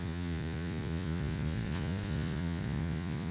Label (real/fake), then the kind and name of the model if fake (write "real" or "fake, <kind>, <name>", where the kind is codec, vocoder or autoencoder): fake, vocoder, Vocos